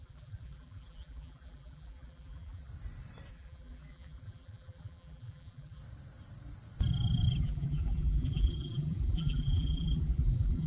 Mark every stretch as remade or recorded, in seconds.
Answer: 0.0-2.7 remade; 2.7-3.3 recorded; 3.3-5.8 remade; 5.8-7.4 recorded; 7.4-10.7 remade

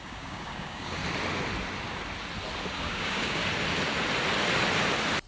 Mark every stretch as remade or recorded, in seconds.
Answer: 0.0-1.0 remade; 1.0-2.7 recorded; 2.7-3.4 remade; 3.4-5.3 recorded